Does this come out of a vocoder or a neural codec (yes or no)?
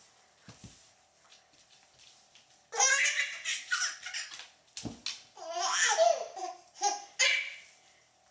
no